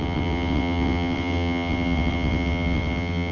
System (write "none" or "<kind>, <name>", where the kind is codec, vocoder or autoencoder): vocoder, WaveNeXt